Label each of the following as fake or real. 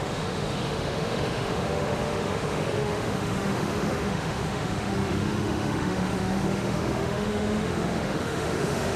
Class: fake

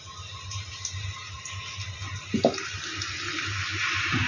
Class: real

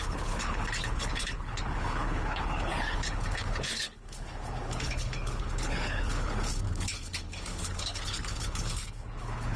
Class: fake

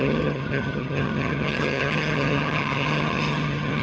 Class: fake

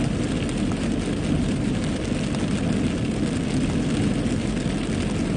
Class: real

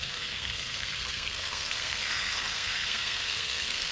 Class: fake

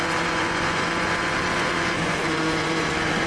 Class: fake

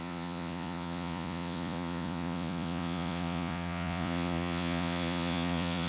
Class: fake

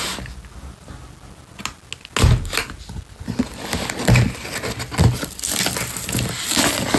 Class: real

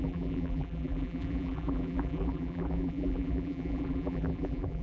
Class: fake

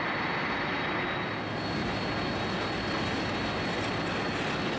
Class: real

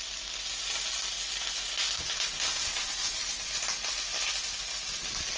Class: real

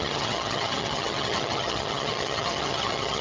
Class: fake